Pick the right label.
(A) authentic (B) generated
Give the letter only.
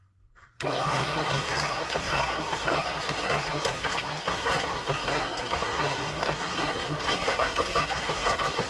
B